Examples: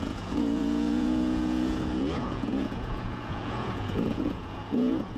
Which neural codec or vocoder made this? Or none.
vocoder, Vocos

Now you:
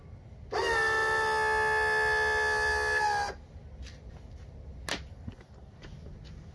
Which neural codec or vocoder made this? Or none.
none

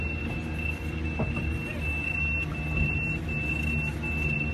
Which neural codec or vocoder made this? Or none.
none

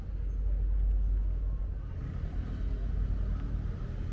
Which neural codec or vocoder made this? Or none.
none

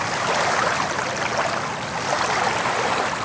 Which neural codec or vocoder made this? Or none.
none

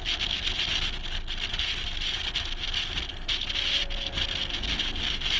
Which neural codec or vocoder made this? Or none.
none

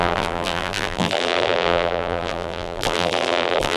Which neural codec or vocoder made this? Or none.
vocoder, BigVGAN v2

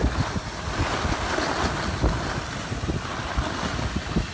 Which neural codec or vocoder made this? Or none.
none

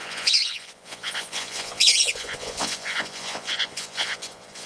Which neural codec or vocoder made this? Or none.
vocoder, Vocos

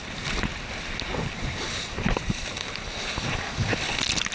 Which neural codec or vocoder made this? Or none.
none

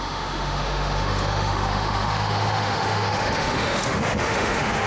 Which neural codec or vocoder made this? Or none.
autoencoder, DAC-VAE